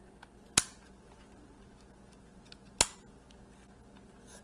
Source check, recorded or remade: recorded